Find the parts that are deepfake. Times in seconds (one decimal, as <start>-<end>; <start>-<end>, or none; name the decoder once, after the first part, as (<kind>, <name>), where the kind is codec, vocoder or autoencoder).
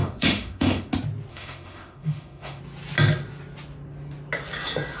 0.0-0.9 (autoencoder, DAC-VAE); 1.3-2.6